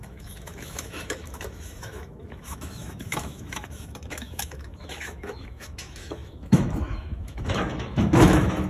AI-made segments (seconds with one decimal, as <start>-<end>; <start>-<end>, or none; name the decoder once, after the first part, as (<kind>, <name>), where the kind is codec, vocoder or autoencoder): 0.0-8.7 (autoencoder, DAC-VAE)